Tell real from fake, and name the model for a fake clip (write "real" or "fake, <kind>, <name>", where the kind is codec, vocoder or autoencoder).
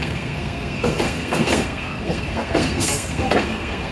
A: fake, codec, SNAC